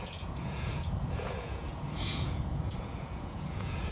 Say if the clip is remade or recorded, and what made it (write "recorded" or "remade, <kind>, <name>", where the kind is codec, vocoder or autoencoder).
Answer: remade, vocoder, Vocos